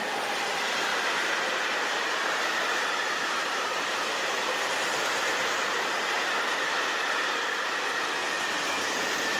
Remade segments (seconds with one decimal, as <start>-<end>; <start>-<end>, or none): 0.9-4.5